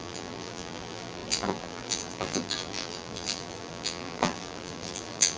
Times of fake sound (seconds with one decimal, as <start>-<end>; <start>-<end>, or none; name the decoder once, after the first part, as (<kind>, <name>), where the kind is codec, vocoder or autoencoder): 0.0-5.4 (vocoder, BigVGAN v2)